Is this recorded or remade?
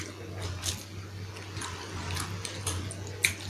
recorded